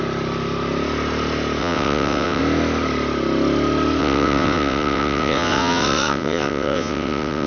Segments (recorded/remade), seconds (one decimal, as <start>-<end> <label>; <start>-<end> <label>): 0.0-1.6 recorded; 1.6-2.4 remade; 2.4-4.0 recorded; 4.0-7.5 remade